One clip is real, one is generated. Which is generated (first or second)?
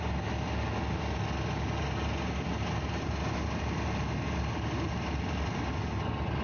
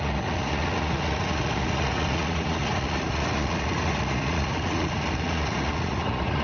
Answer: second